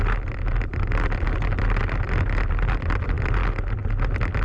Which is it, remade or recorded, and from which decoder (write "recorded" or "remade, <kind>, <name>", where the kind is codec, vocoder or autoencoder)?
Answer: recorded